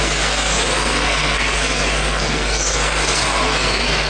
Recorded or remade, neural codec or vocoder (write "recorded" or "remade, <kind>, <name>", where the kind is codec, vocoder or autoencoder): remade, codec, SNAC